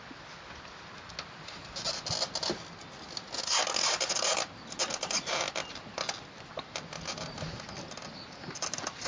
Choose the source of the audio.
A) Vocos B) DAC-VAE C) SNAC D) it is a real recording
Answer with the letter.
D